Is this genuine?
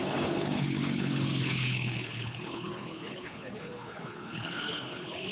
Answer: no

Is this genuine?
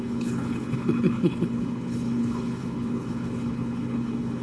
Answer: no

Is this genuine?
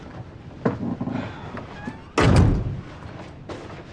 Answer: yes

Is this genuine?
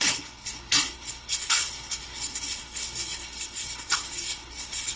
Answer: no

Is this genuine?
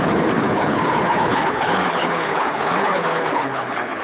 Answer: no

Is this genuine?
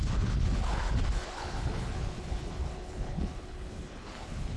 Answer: no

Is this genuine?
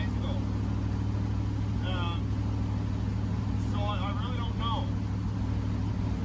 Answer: yes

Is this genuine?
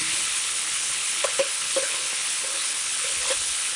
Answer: no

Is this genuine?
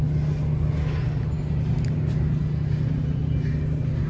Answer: yes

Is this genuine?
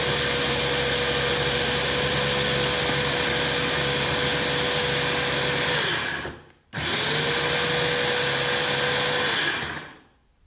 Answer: yes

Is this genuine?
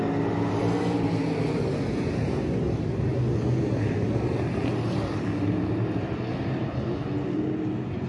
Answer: yes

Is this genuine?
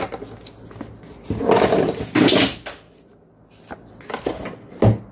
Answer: yes